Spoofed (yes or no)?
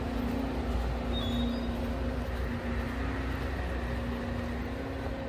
no